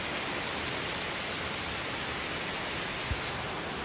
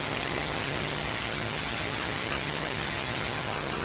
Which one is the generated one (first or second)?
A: second